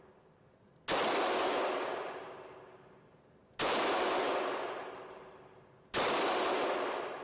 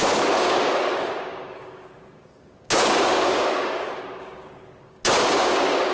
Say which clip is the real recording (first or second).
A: first